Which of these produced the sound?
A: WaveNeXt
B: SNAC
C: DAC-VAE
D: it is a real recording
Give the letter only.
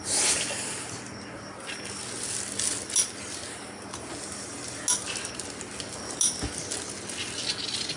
D